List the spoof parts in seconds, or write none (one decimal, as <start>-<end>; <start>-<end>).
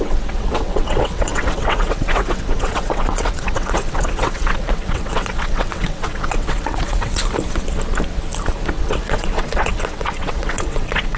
0.0-7.2; 8.8-11.2